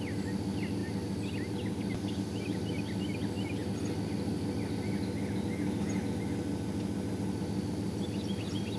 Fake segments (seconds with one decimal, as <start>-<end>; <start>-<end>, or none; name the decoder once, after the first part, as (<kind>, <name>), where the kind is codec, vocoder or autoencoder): none